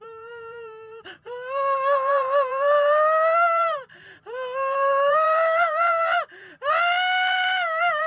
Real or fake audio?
fake